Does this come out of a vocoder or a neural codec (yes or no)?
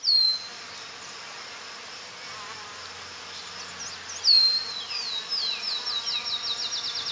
no